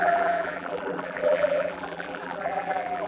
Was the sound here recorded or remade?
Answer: remade